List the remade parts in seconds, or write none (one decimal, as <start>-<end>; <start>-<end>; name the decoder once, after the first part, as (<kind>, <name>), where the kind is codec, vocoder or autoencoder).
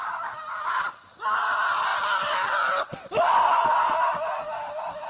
none